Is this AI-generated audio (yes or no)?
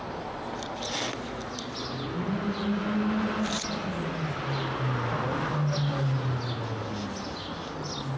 no